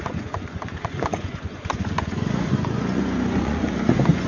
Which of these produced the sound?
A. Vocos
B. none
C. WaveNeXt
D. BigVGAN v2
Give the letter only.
A